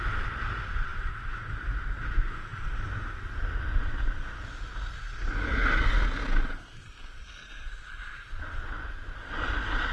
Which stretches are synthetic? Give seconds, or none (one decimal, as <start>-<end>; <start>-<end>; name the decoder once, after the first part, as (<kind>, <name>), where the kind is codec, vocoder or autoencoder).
none